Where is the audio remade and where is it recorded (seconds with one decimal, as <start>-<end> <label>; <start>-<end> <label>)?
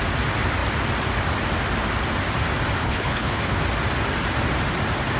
0.0-2.8 recorded; 2.8-3.6 remade; 3.6-5.2 recorded